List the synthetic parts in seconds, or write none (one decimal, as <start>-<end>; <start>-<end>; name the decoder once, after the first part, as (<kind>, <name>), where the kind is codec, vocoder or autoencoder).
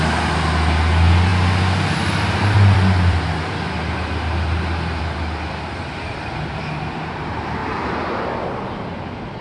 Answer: 1.3-5.0 (vocoder, BigVGAN v2)